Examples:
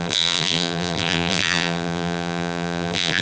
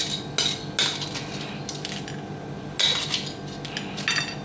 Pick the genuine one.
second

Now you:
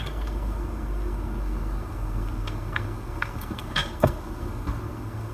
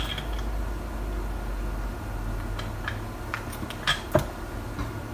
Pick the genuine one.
second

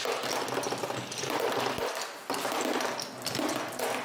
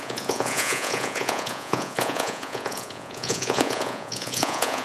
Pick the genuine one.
first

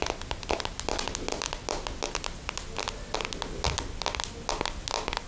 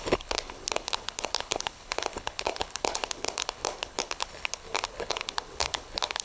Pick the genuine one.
first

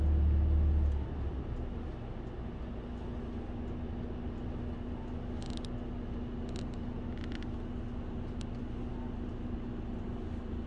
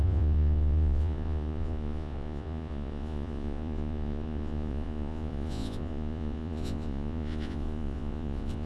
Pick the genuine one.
first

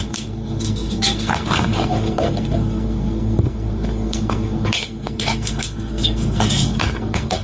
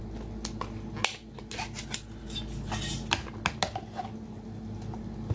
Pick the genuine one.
second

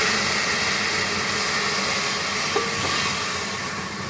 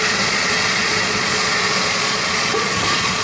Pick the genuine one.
first